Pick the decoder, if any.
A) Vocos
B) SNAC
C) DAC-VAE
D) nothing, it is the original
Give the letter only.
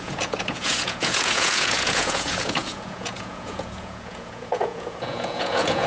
A